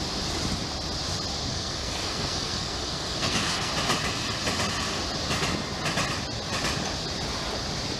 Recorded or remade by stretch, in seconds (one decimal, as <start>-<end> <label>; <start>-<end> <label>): 0.0-1.5 recorded; 1.5-3.7 remade; 3.7-8.0 recorded